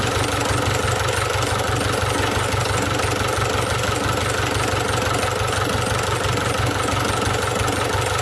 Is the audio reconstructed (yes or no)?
no